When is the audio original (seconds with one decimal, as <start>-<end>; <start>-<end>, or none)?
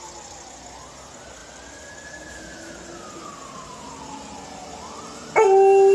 0.0-5.9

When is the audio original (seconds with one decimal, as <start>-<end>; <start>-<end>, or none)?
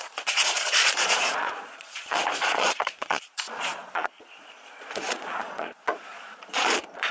none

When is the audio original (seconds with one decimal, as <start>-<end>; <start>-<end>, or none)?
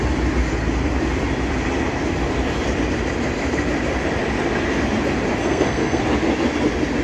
0.0-5.4; 6.0-7.0